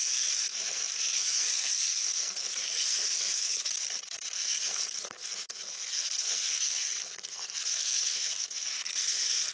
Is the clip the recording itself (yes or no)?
no